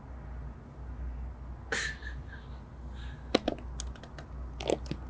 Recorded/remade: recorded